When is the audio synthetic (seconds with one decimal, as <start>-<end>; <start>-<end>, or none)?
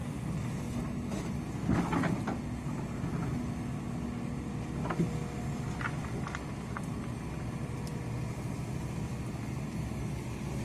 none